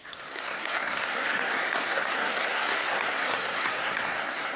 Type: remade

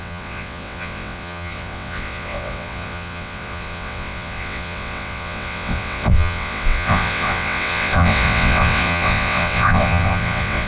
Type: remade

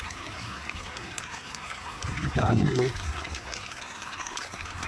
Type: remade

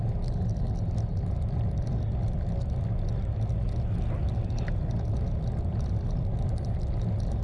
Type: recorded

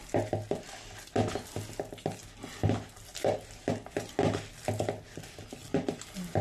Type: recorded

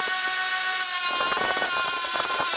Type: recorded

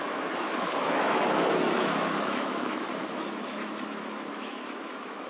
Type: remade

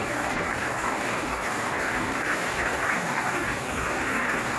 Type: remade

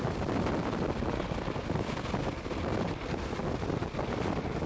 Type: recorded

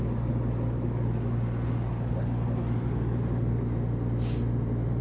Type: recorded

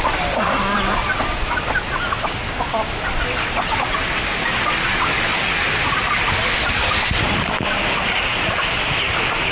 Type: recorded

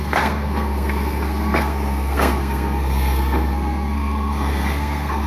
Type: remade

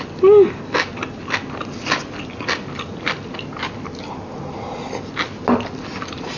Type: recorded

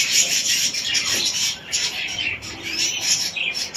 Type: remade